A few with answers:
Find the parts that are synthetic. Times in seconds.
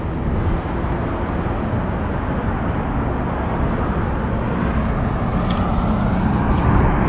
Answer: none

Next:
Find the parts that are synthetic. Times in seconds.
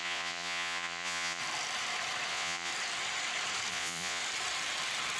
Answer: 0.0-1.4 (vocoder, Vocos); 2.3-2.7; 3.7-4.2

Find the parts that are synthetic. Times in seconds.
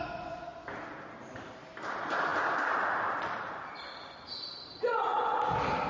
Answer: none